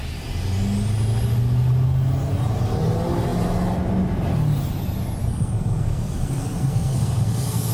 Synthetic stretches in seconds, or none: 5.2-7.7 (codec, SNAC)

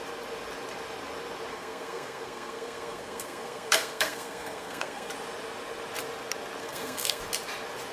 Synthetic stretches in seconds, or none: 1.5-5.1 (codec, SNAC); 6.6-7.2

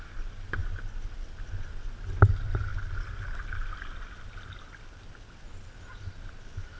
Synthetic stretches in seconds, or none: none

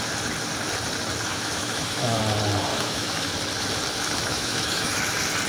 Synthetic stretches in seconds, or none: 1.3-2.2 (autoencoder, DAC-VAE); 2.7-3.3; 4.3-5.0

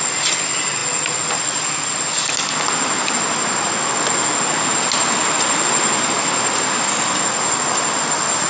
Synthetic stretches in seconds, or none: none

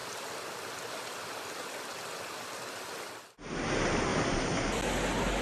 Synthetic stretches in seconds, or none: 4.1-4.7 (vocoder, BigVGAN v2)